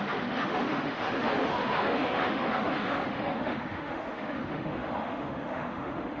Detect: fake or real fake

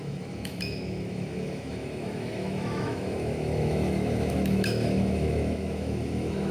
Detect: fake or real fake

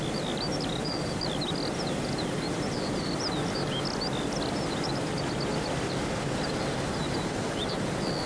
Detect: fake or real real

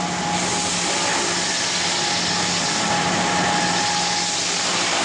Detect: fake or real real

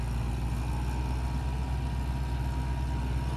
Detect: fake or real real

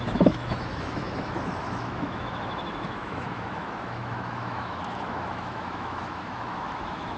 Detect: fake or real fake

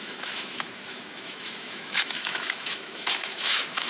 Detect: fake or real fake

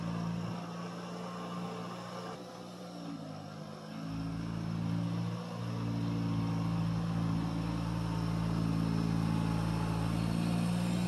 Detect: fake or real real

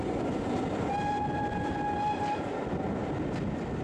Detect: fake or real real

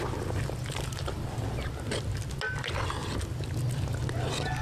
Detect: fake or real real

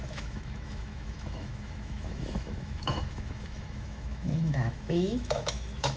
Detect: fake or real fake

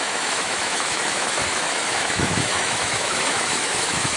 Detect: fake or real fake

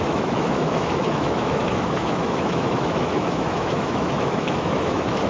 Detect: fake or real fake